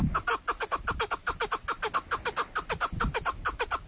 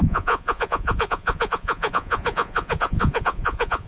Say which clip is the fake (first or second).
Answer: second